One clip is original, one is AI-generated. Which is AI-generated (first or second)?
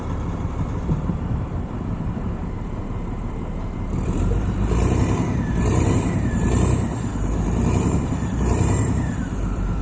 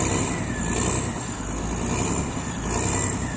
first